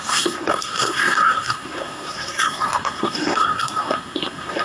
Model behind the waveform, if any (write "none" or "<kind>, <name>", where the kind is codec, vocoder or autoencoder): codec, SNAC